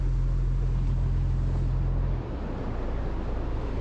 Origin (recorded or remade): recorded